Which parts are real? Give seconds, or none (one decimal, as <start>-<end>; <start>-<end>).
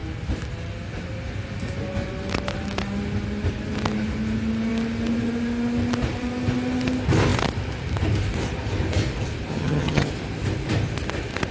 0.0-9.5; 10.1-11.5